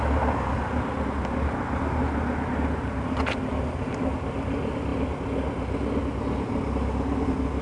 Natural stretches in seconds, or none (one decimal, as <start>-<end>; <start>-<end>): 0.0-7.6